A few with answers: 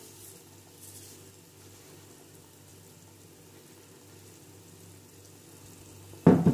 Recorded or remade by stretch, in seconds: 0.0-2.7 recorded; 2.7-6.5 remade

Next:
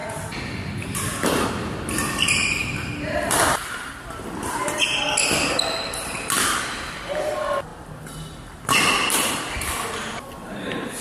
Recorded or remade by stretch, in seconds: 0.0-11.0 remade

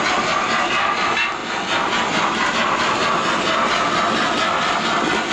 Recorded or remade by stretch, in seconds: 0.0-5.3 recorded

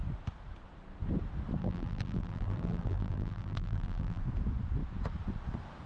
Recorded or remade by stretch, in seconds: 0.0-1.6 recorded; 1.6-4.2 remade; 4.2-5.9 recorded

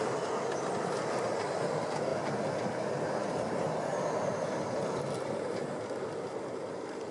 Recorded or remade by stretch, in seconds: 0.0-7.1 recorded

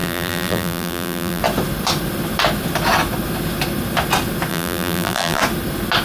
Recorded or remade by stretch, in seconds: 0.0-1.4 remade; 1.4-4.5 recorded; 4.5-5.4 remade; 5.4-6.0 recorded